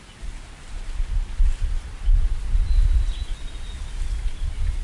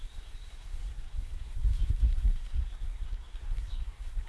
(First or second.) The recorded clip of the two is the first